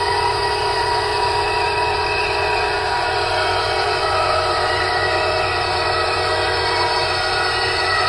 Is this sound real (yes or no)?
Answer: no